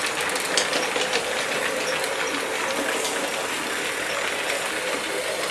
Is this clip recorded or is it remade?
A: recorded